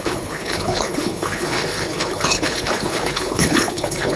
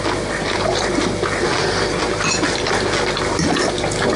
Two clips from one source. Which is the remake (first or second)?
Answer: first